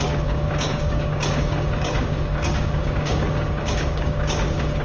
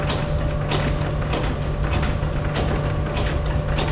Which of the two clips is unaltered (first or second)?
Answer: second